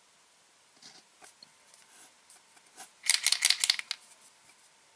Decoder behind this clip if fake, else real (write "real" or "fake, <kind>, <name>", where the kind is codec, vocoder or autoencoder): real